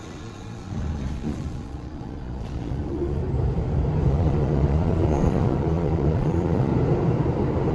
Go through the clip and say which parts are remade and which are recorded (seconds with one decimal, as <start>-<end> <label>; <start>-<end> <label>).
0.0-3.2 remade; 3.2-4.1 recorded; 4.1-6.7 remade; 6.7-7.7 recorded